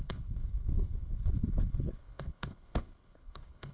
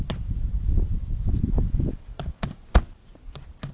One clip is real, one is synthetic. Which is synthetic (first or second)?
first